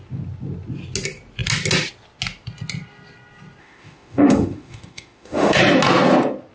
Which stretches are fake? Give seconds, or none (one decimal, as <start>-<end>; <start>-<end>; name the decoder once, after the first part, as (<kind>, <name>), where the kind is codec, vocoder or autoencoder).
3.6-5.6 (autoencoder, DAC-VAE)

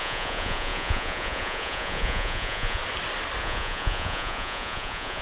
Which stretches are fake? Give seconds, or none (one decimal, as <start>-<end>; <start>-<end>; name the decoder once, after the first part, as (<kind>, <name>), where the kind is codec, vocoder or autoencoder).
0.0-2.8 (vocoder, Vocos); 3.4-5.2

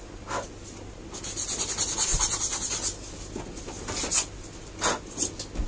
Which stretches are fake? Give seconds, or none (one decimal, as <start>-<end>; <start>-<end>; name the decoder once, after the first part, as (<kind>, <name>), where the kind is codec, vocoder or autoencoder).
none

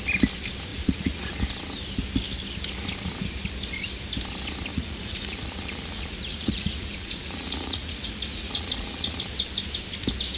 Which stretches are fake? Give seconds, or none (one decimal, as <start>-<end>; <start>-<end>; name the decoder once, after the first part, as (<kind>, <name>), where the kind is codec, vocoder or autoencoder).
0.7-1.4 (vocoder, Vocos); 4.7-9.2

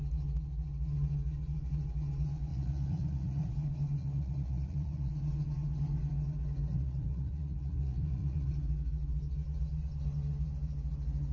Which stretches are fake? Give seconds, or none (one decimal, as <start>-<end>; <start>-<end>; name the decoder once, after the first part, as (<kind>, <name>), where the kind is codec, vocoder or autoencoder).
2.5-3.5 (vocoder, Vocos); 4.0-5.1; 6.7-8.5

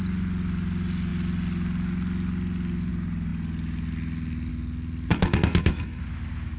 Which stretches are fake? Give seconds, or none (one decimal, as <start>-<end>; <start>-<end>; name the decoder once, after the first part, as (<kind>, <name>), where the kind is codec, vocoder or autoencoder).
5.1-6.0 (codec, SNAC)